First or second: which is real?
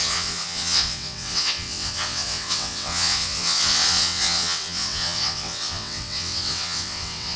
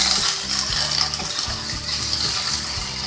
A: second